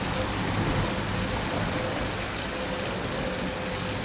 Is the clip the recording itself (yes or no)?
yes